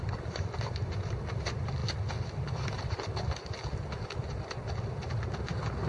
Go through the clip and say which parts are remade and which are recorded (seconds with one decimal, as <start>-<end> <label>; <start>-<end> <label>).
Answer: 0.0-5.9 recorded